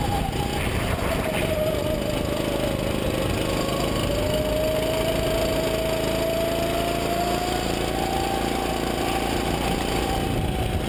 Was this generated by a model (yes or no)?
no